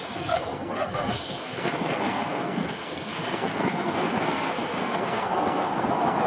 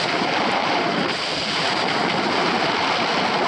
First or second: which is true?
second